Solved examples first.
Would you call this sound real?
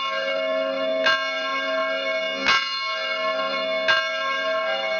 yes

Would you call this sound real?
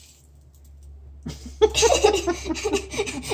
yes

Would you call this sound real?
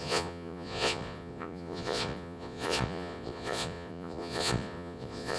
no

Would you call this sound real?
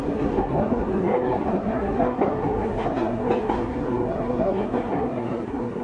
no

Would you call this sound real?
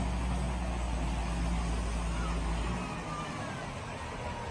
yes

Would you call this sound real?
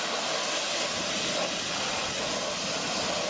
yes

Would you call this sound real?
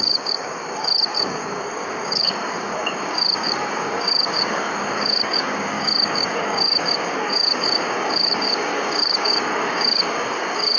no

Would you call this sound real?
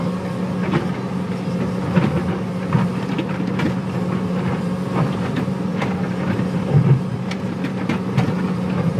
yes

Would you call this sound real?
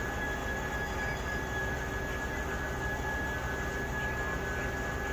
yes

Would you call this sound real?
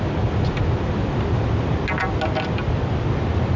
yes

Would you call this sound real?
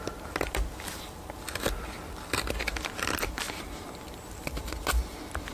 yes